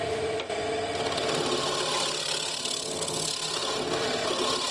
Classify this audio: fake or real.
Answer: real